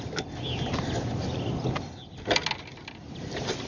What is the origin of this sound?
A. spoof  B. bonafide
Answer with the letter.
B